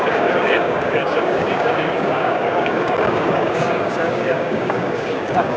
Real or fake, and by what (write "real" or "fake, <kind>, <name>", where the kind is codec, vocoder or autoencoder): fake, codec, DAC